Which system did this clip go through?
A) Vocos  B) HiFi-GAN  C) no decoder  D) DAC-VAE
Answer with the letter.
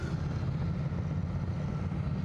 C